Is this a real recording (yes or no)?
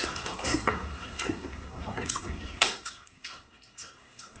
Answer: no